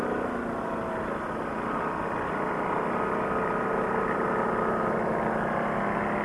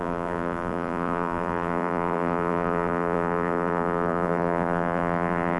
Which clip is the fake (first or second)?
second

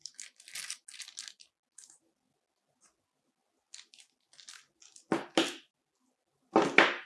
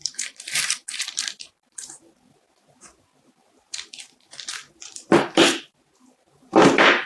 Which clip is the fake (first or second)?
second